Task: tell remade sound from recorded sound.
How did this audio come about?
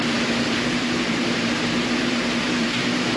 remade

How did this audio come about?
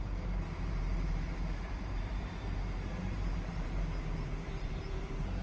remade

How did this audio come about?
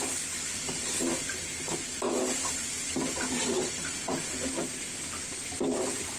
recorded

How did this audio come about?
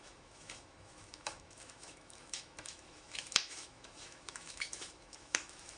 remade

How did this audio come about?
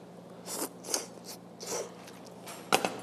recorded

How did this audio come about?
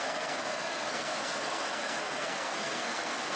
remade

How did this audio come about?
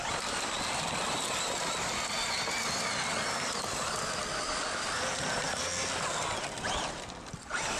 recorded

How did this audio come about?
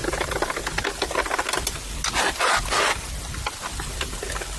recorded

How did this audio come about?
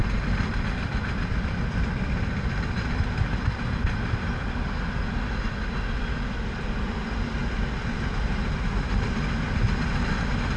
recorded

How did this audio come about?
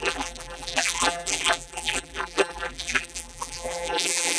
remade